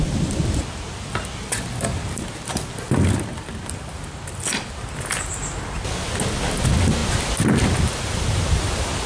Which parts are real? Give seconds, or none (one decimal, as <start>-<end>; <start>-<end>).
0.0-9.1